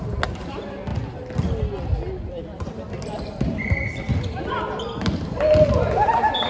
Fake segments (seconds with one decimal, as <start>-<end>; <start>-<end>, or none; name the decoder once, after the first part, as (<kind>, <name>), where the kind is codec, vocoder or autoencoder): none

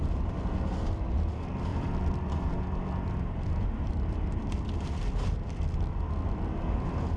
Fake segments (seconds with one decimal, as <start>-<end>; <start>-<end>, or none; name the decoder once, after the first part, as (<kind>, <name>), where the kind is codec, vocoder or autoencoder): 1.7-2.6 (vocoder, BigVGAN v2)